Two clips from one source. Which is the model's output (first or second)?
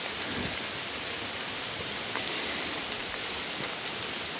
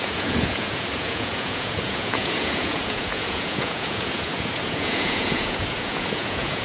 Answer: second